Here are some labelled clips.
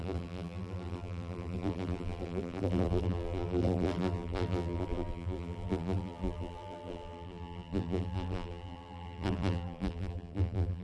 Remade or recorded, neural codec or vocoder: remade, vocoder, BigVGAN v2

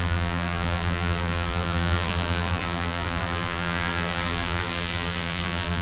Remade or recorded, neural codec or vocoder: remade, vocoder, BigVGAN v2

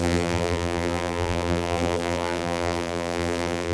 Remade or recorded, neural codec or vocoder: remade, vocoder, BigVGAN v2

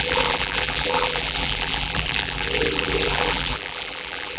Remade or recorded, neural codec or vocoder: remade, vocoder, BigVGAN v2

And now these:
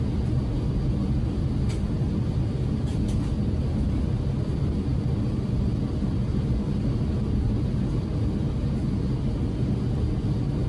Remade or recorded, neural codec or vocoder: recorded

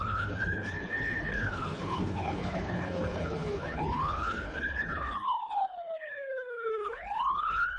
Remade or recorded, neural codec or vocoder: remade, codec, HILCodec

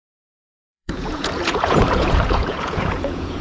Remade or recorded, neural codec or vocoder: remade, vocoder, Vocos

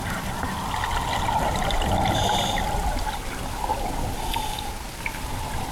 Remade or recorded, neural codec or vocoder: recorded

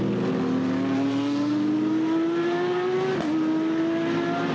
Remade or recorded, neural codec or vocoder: recorded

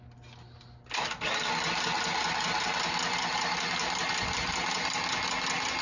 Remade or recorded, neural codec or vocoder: recorded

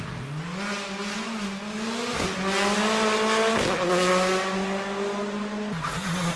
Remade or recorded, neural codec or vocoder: recorded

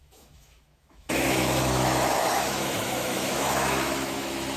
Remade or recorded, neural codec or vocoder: remade, autoencoder, DAC-VAE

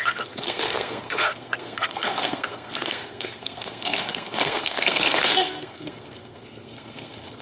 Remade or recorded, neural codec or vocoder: remade, codec, SNAC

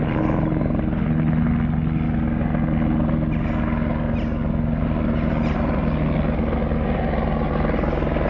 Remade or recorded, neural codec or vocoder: recorded